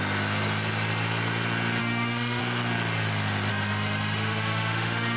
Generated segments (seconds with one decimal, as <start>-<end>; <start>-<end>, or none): 1.8-2.4; 3.5-5.2